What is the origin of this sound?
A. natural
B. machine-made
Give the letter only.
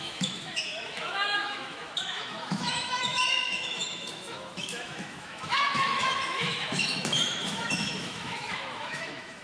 B